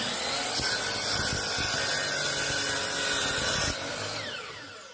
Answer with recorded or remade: recorded